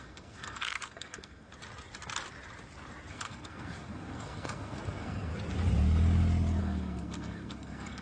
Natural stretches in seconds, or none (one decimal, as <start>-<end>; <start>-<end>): 1.5-3.1; 5.3-6.6